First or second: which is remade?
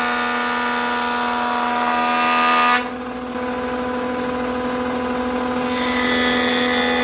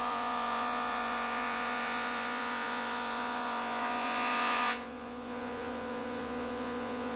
second